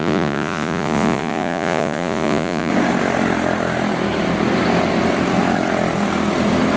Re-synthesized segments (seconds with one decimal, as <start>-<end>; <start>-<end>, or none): 0.0-2.7